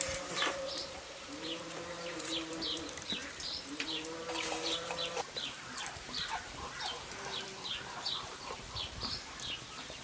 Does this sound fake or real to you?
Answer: fake